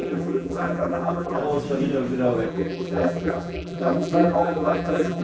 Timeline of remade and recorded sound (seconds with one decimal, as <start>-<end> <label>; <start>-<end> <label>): 0.0-1.4 remade; 1.4-2.5 recorded; 2.5-5.2 remade

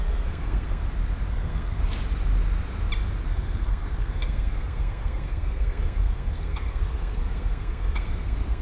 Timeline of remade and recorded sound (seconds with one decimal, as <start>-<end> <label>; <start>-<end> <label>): 0.0-0.8 remade; 0.8-1.3 recorded; 1.3-1.8 remade; 1.8-3.3 recorded; 3.3-8.6 remade

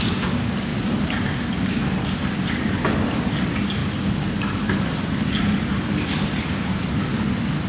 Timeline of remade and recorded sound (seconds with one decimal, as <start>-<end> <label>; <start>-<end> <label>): 0.0-7.7 recorded

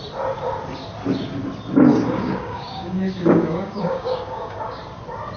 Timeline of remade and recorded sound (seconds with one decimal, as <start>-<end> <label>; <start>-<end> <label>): 0.0-1.9 recorded; 1.9-4.8 remade; 4.8-5.4 recorded

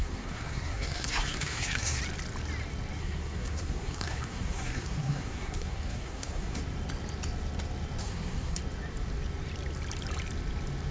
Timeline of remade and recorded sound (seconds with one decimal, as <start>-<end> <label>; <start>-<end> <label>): 0.0-2.0 remade; 2.0-3.0 recorded; 3.0-6.6 remade; 6.6-8.0 recorded; 8.0-8.6 remade; 8.6-10.9 recorded